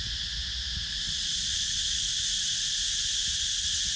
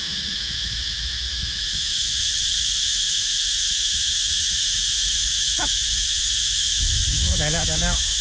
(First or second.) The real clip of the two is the first